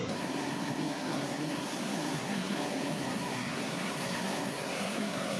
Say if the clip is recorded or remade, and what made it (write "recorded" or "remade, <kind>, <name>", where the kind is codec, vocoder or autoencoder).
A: remade, codec, SNAC